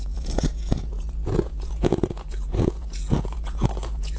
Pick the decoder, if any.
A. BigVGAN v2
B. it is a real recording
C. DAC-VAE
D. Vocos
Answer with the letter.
D